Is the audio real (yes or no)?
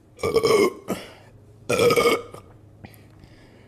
no